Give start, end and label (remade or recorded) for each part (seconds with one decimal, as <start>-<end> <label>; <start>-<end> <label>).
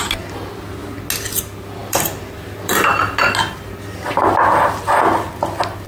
0.0-1.8 recorded; 1.8-2.9 remade; 2.9-5.9 recorded